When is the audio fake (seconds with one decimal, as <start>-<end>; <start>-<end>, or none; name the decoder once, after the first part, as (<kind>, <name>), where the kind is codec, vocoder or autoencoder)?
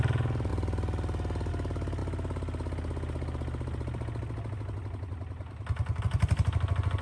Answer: none